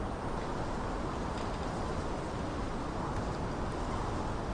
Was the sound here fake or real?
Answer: real